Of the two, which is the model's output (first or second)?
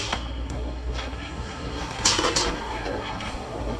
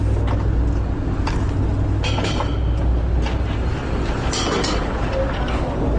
first